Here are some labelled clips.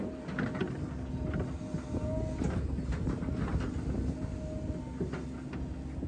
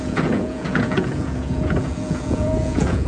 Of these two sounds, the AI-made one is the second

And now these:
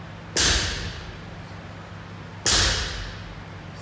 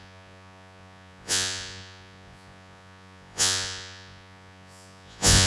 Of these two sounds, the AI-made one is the second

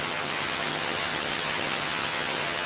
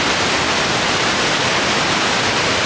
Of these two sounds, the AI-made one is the first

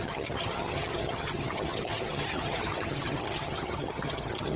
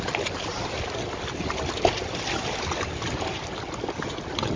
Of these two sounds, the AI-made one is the first